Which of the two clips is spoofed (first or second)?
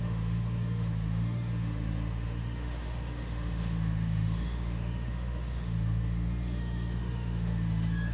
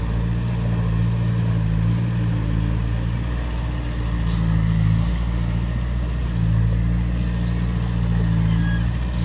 first